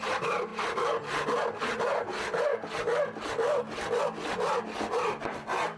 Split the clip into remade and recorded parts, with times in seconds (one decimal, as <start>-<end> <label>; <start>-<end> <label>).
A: 0.0-5.8 recorded